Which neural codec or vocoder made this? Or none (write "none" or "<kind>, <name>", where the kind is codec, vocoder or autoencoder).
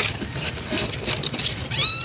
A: none